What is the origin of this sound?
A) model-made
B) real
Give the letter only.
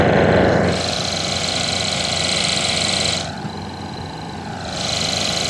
A